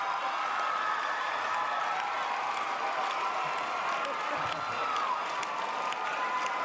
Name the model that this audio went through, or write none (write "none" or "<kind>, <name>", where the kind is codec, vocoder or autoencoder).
none